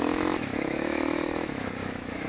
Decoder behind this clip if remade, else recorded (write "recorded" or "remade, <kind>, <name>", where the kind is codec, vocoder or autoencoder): remade, autoencoder, DAC-VAE